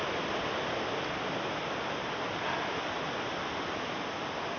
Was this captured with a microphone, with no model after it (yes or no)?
yes